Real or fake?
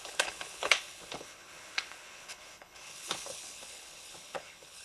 fake